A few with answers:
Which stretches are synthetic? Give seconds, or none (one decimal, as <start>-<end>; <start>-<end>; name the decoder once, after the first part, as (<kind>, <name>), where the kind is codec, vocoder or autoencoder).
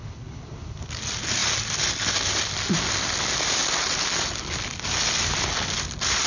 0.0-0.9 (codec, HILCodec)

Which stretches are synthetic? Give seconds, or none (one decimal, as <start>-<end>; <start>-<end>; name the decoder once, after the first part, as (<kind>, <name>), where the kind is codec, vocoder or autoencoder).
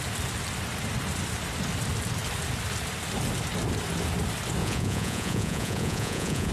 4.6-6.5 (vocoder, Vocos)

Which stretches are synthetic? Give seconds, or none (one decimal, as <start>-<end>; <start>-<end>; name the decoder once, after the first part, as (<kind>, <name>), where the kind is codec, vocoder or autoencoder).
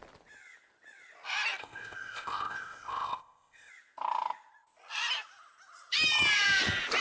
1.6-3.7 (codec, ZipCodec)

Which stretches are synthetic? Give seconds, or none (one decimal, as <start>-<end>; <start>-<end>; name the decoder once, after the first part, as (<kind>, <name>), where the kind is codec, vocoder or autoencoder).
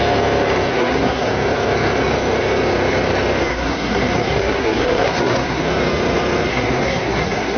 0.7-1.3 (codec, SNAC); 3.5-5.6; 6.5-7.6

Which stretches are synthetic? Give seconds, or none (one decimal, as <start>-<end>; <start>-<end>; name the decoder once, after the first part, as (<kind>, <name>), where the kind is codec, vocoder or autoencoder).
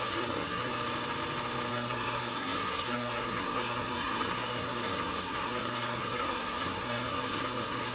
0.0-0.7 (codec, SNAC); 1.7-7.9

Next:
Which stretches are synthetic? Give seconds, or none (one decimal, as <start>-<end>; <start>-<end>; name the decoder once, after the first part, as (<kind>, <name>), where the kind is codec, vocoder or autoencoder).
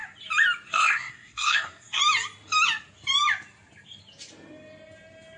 0.7-2.0 (codec, SNAC)